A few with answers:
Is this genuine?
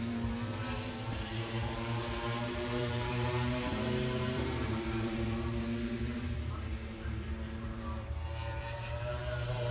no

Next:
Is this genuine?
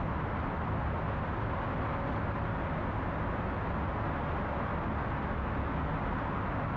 yes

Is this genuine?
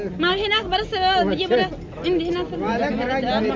yes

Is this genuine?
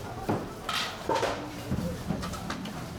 no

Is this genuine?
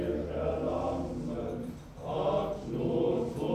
yes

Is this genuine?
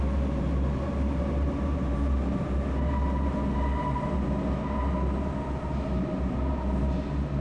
yes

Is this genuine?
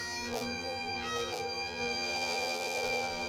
no